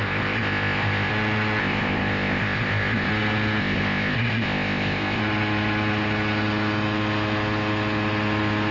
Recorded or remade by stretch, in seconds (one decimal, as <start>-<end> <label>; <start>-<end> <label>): 0.0-1.1 remade; 1.1-1.6 recorded; 1.6-3.1 remade; 3.1-3.6 recorded; 3.6-5.2 remade; 5.2-8.7 recorded